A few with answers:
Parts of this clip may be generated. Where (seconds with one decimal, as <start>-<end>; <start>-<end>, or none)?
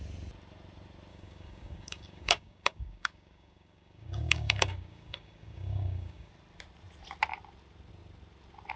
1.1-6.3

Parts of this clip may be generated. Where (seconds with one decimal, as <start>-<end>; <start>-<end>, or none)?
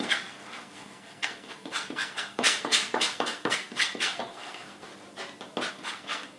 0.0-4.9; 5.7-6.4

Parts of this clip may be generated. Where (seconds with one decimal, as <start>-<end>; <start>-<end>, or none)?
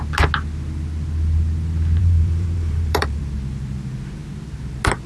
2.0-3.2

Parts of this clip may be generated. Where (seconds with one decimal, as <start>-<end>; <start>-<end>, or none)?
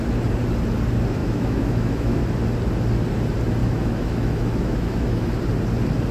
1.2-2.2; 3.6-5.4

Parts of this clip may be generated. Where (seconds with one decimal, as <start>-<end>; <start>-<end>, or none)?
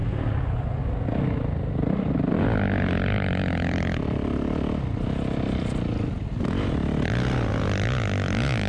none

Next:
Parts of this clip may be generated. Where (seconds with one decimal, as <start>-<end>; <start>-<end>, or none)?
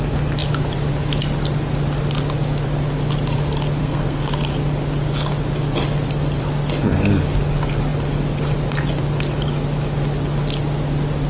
3.8-4.3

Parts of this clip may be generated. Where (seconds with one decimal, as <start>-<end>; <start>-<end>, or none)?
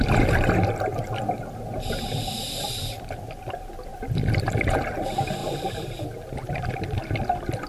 3.9-4.9; 5.4-6.0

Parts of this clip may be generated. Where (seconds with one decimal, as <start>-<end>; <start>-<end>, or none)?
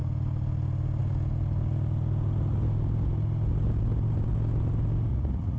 5.1-5.6